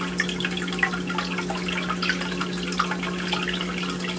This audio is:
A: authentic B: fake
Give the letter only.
A